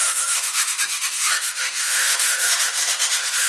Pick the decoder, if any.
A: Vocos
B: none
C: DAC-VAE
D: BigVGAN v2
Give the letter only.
C